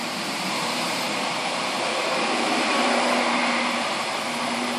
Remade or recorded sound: remade